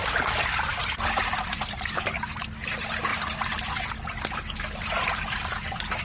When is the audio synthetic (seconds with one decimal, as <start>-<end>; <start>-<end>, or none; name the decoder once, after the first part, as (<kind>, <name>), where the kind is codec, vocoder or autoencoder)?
0.0-2.2 (vocoder, BigVGAN v2); 3.1-3.9